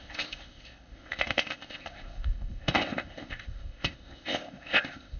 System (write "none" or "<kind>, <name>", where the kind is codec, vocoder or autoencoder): codec, ZipCodec